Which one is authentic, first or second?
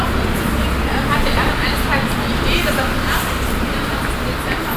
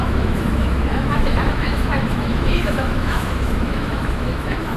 first